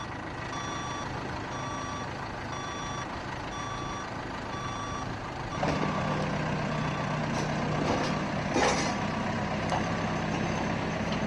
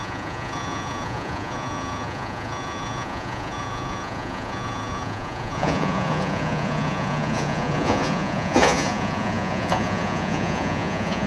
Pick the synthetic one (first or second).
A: second